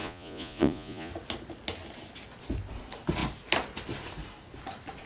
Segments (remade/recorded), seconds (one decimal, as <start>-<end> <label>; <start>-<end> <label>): 0.0-1.1 remade; 1.1-5.1 recorded